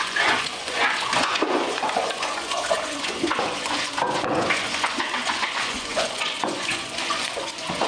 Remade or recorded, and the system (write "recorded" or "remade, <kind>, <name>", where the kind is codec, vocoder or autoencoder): remade, vocoder, Vocos